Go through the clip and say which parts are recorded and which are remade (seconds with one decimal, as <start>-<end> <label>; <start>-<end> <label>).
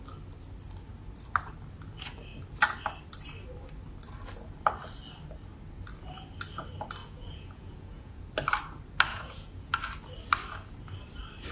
0.0-7.0 recorded; 7.0-8.3 remade; 8.3-9.1 recorded; 9.1-9.7 remade; 9.7-11.5 recorded